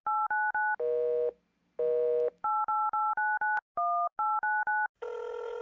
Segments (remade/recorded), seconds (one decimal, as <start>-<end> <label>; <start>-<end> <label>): 0.0-5.6 recorded